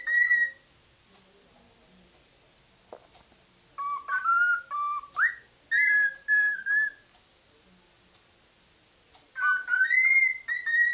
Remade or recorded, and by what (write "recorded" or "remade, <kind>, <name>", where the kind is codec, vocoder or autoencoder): recorded